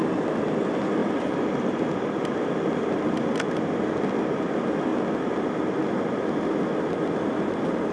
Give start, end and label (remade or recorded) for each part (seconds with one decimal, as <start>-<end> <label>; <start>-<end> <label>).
0.0-1.0 recorded; 1.0-3.7 remade; 3.7-7.9 recorded